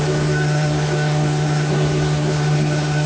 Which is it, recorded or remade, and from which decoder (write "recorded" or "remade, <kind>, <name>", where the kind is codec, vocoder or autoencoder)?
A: remade, codec, SNAC